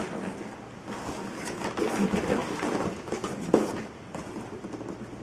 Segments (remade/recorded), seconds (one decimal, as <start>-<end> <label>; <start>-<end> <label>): 0.0-2.4 recorded; 2.4-4.8 remade; 4.8-5.2 recorded

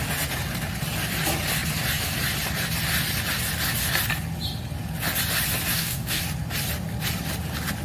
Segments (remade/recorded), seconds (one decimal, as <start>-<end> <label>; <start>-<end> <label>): 0.0-5.7 recorded; 5.7-6.2 remade; 6.2-7.8 recorded

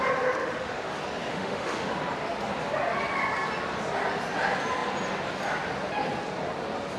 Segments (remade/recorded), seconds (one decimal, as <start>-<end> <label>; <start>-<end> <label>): 0.0-0.4 recorded; 0.4-0.9 remade; 0.9-1.3 recorded; 1.3-1.9 remade; 1.9-7.0 recorded